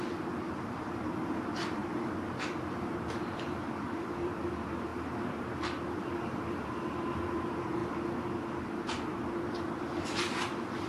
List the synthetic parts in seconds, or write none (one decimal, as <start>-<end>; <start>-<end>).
0.0-1.8; 3.3-4.9; 6.1-7.8; 9.4-10.9